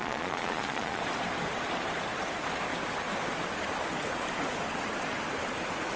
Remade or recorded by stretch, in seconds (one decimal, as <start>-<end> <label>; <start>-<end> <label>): 0.0-1.0 remade; 1.0-6.0 recorded